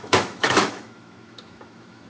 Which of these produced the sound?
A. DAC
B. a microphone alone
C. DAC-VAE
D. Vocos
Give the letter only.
C